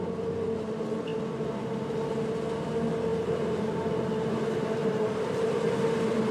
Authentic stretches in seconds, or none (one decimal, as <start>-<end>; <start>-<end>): 0.0-3.1; 3.9-4.8; 5.7-6.3